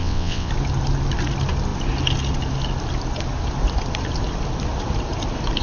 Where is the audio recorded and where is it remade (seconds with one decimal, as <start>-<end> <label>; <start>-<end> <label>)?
0.0-0.5 remade; 0.5-5.6 recorded